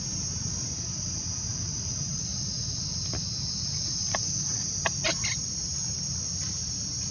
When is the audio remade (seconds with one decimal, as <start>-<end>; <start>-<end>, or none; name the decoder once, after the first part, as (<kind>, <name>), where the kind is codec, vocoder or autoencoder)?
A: none